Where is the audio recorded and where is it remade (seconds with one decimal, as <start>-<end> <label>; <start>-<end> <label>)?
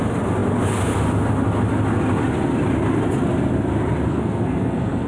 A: 0.0-4.1 recorded; 4.1-5.1 remade